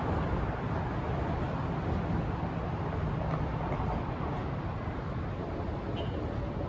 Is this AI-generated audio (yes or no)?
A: no